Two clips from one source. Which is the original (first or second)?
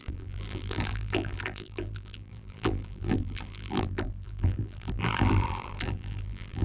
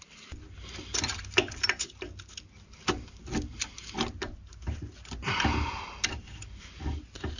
second